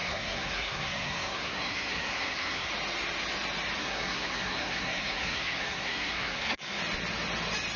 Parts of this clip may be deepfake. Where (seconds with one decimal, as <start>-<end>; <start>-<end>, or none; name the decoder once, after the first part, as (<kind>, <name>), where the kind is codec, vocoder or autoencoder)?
0.0-2.7 (codec, SNAC); 3.8-6.8